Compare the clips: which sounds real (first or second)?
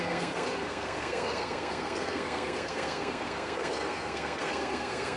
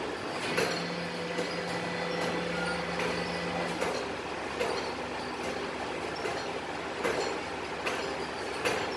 second